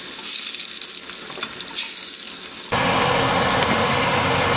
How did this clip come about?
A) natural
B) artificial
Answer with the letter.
A